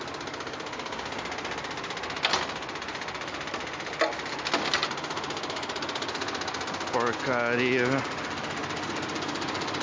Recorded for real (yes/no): yes